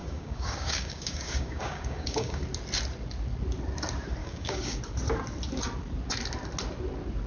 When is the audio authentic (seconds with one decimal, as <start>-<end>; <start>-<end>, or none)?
2.4-4.2; 4.8-7.3